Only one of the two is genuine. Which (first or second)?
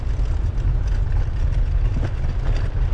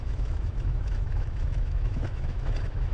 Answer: first